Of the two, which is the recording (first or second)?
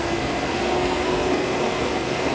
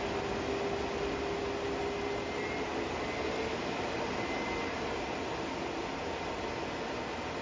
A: second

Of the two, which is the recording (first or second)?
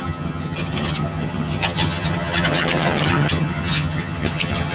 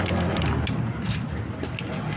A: second